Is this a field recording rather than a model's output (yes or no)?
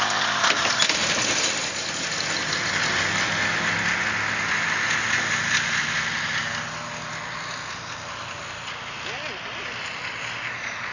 yes